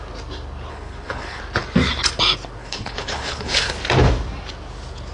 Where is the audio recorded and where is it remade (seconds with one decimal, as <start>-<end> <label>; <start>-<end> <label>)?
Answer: 0.0-0.7 recorded; 0.7-1.4 remade; 1.4-2.6 recorded; 2.6-3.7 remade; 3.7-5.1 recorded